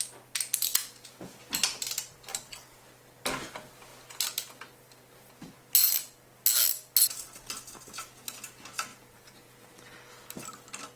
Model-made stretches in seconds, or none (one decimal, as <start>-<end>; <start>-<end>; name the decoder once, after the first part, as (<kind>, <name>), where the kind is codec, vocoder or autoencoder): 0.7-1.4 (vocoder, Vocos); 8.9-9.7